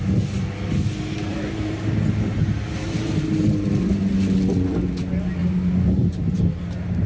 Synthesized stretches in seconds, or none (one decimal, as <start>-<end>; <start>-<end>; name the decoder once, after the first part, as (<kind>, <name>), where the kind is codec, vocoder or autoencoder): 1.3-1.8 (vocoder, BigVGAN v2); 2.3-3.7; 5.4-7.1